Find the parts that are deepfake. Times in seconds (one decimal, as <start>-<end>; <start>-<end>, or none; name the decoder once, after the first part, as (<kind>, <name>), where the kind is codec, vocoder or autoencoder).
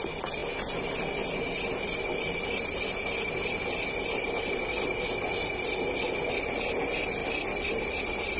none